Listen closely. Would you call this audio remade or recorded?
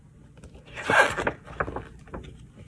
recorded